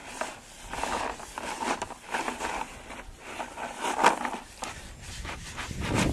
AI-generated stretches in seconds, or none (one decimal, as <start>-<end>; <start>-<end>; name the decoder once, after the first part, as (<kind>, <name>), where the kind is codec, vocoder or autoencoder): none